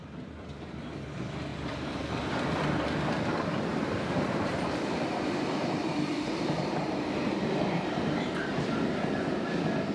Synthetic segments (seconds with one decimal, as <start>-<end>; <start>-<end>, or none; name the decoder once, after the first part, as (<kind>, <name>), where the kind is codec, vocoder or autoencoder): 1.5-2.3 (vocoder, BigVGAN v2); 3.7-8.8